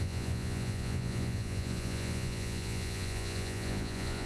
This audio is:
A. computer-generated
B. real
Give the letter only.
A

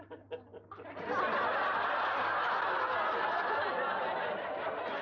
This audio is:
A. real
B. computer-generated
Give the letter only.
A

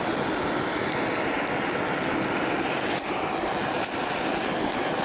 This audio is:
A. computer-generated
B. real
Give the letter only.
B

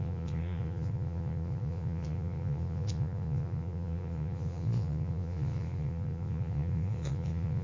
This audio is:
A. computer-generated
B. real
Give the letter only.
A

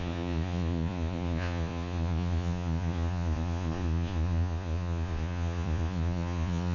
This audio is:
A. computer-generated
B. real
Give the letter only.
A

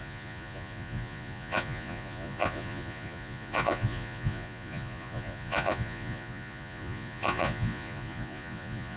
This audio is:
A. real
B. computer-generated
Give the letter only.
B